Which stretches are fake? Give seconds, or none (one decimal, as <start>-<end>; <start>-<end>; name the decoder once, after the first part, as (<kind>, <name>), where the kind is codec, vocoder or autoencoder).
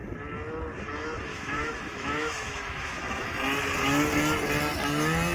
1.3-3.0 (autoencoder, DAC-VAE)